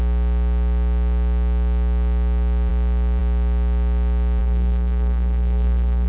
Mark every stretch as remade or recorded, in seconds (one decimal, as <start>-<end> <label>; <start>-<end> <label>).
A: 0.0-4.4 recorded; 4.4-6.1 remade